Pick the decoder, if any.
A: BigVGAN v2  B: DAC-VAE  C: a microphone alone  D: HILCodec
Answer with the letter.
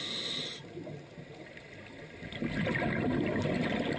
C